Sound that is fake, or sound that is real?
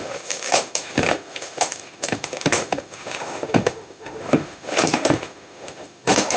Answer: fake